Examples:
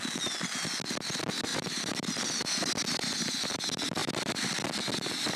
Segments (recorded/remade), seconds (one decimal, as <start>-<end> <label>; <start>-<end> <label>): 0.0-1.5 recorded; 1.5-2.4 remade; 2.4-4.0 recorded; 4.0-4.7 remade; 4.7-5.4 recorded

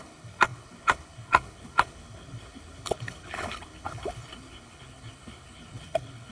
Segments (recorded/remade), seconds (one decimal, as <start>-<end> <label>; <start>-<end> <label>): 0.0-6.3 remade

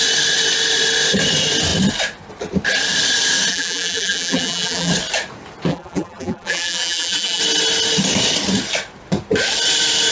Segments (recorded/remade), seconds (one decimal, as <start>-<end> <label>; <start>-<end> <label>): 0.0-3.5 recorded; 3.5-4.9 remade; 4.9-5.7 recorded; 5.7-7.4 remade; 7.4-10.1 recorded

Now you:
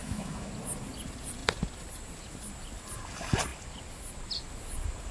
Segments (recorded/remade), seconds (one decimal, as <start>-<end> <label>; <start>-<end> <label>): 0.0-0.5 remade; 0.5-5.1 recorded

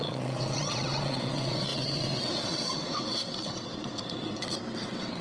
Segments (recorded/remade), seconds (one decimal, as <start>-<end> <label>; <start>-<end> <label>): 0.0-5.2 remade